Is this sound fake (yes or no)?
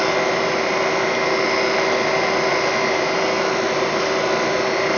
no